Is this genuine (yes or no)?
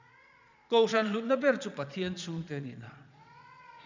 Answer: no